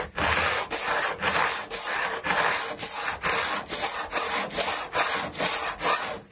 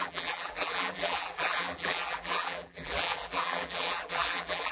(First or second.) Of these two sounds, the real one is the first